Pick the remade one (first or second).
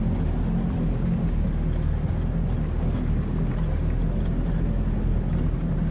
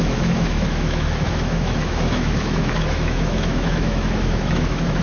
second